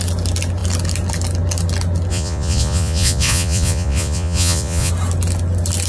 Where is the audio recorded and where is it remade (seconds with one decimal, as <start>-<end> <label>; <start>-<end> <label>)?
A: 0.0-2.1 recorded; 2.1-4.9 remade; 4.9-5.9 recorded